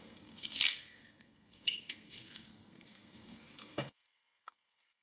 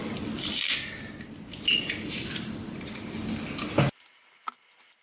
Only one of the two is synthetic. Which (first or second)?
first